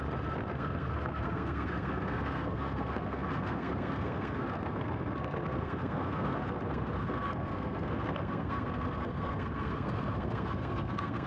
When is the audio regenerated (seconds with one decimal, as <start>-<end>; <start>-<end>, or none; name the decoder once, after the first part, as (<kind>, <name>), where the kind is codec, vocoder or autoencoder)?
0.5-11.3 (codec, SNAC)